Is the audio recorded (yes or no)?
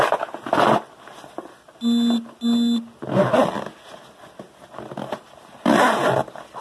yes